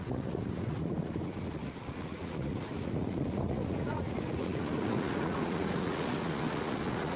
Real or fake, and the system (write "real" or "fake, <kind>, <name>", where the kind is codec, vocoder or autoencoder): fake, vocoder, Vocos